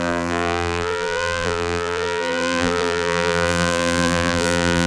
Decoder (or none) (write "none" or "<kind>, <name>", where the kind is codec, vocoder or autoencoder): vocoder, BigVGAN v2